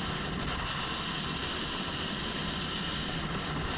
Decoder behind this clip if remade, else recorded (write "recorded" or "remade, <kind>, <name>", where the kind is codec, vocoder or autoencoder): recorded